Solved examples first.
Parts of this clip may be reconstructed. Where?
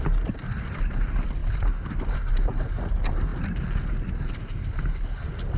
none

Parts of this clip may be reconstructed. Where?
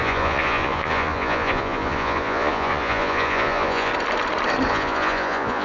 0.0-3.9 (vocoder, Vocos); 4.7-5.6